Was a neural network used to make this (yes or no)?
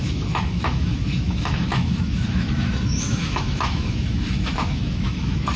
yes